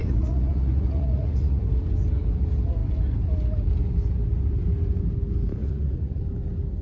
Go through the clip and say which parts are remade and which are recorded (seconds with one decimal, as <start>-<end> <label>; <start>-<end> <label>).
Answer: 0.0-1.7 remade; 1.7-5.6 recorded; 5.6-6.2 remade; 6.2-6.8 recorded